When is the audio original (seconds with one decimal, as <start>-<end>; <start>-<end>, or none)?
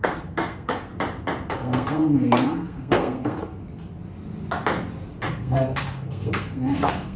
0.9-1.5; 3.6-5.3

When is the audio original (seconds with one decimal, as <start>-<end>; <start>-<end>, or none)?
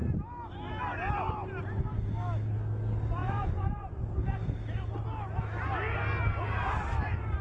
0.0-3.2; 4.0-7.4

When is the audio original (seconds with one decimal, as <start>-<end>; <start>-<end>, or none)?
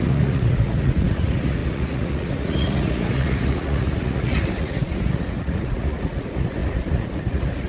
none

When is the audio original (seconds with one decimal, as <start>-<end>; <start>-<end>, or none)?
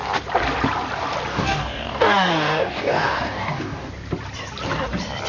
0.0-1.3; 3.9-5.3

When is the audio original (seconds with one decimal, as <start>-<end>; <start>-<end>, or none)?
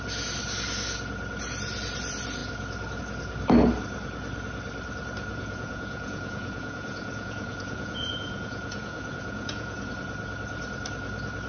0.0-5.3; 9.9-11.5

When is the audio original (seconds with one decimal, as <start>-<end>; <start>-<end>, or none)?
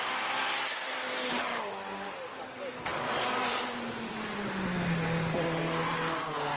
0.0-6.6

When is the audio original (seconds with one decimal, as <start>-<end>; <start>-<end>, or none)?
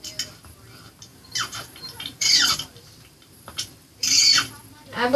0.0-1.1; 4.2-5.2